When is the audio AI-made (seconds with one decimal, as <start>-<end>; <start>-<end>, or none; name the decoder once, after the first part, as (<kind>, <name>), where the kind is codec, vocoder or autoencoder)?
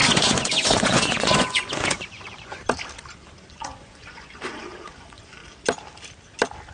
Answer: 0.0-2.6 (vocoder, Vocos); 3.5-5.4